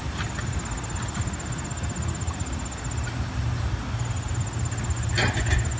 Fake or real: real